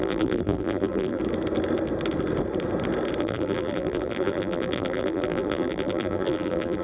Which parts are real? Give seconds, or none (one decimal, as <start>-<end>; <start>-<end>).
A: 1.2-3.2